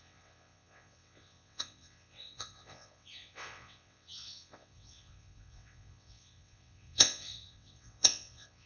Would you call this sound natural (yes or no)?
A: no